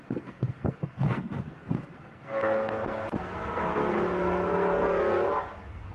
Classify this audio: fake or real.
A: fake